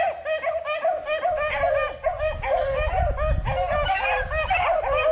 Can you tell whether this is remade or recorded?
recorded